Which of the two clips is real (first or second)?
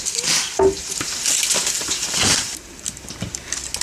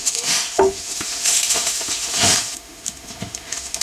first